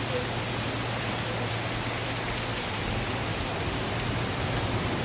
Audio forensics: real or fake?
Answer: real